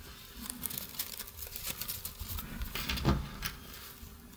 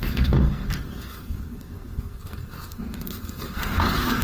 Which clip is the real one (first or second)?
first